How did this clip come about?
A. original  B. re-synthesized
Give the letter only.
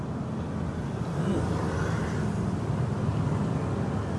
A